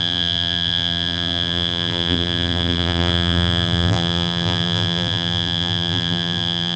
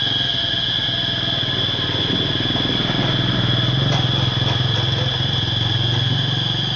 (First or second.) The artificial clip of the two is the first